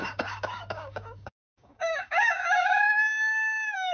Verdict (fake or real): fake